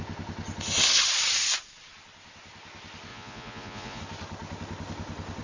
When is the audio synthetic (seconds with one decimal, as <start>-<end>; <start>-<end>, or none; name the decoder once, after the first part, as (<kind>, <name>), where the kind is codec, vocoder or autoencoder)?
3.1-4.0 (vocoder, Vocos)